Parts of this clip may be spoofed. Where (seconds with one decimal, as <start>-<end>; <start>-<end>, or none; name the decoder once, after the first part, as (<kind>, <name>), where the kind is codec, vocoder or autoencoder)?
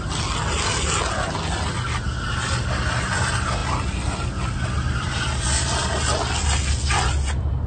none